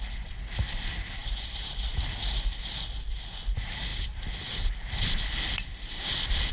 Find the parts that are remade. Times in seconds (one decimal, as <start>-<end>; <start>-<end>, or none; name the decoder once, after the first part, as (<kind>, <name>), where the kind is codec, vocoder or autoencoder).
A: 1.2-2.2 (vocoder, BigVGAN v2); 3.9-6.5